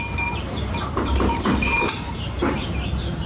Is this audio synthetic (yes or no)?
yes